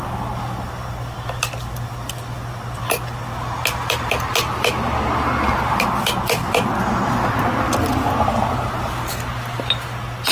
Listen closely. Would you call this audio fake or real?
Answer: real